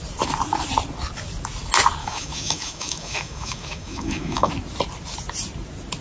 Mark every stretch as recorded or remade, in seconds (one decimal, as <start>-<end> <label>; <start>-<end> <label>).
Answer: 0.0-2.0 recorded; 2.0-4.5 remade; 4.5-6.0 recorded